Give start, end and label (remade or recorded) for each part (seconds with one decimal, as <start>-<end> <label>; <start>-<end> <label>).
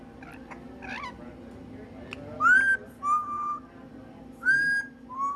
0.0-5.4 recorded